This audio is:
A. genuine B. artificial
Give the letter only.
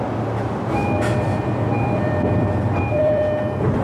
B